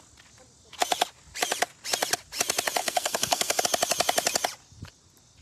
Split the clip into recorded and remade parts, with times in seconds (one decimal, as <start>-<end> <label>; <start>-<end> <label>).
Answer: 0.0-2.8 recorded; 2.8-3.6 remade; 3.6-5.4 recorded